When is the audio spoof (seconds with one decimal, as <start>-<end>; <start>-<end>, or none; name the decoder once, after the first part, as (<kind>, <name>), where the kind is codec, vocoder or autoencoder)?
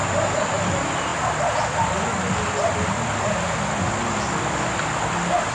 none